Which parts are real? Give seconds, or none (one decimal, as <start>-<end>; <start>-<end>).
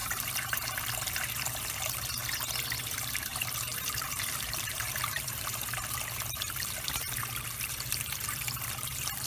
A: 2.2-2.8